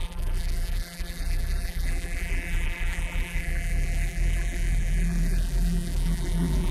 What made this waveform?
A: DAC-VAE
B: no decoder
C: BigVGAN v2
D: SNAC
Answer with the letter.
C